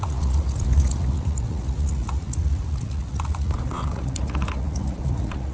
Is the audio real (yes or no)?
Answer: no